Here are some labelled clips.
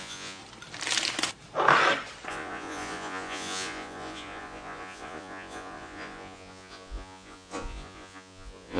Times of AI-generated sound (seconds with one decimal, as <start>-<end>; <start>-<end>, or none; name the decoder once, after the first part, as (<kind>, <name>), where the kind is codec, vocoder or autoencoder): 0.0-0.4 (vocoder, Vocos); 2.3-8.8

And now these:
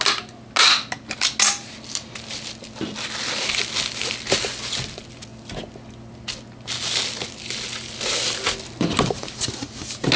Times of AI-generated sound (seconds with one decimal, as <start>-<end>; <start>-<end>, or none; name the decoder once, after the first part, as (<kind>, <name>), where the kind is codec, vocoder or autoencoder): none

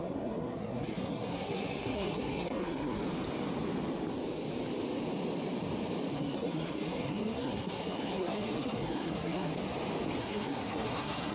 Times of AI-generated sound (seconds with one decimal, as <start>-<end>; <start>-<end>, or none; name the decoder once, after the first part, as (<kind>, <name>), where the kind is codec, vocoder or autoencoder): 0.0-3.0 (codec, SNAC); 6.1-9.5; 10.2-11.3

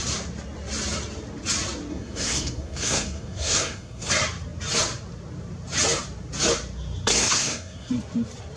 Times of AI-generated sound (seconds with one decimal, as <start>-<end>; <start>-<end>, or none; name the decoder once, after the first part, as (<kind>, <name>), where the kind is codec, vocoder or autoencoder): 1.9-4.1 (codec, SNAC); 7.1-7.9